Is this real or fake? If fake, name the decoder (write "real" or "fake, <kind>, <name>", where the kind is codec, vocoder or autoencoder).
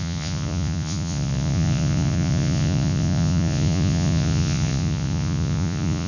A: fake, vocoder, Vocos